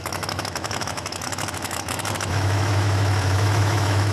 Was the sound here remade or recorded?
remade